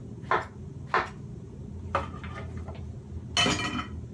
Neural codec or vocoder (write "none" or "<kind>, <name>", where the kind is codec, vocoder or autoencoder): none